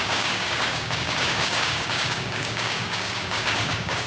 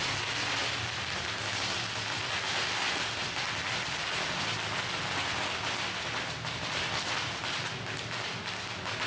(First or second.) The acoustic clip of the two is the second